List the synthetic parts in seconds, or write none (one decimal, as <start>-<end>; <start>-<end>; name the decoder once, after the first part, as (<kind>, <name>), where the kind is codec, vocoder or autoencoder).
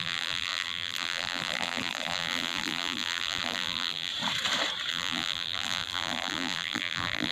0.0-4.1 (vocoder, BigVGAN v2); 4.9-7.3